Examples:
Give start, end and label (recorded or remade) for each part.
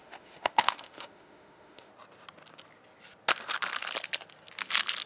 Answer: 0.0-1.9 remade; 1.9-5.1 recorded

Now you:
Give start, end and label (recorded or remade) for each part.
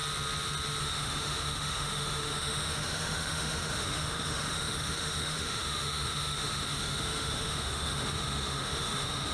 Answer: 0.0-0.8 recorded; 0.8-9.3 remade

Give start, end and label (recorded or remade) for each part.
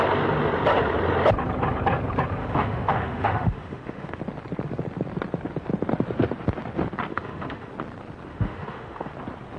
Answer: 0.0-2.4 recorded; 2.4-4.2 remade; 4.2-7.1 recorded; 7.1-7.7 remade; 7.7-8.3 recorded; 8.3-9.1 remade; 9.1-9.6 recorded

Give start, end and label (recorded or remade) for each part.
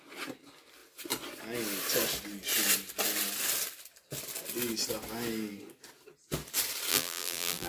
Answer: 0.0-6.9 recorded; 6.9-7.7 remade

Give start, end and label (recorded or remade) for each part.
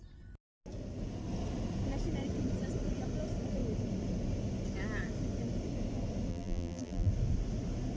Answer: 0.0-6.3 recorded; 6.3-7.1 remade; 7.1-8.0 recorded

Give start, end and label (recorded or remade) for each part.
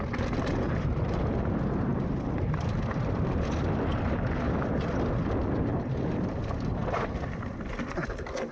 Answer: 0.0-8.5 recorded